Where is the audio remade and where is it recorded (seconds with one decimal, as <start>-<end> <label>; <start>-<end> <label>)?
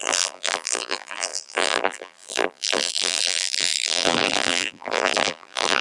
0.0-5.8 remade